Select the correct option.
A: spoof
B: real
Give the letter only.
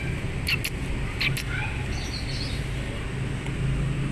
B